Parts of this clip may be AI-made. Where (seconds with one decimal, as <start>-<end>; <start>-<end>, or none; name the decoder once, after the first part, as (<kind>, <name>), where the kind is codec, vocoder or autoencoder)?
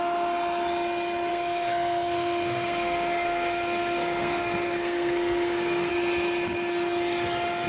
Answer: 1.3-5.9 (codec, SNAC)